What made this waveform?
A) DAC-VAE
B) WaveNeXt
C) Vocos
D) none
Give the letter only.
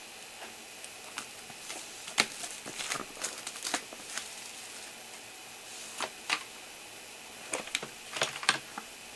D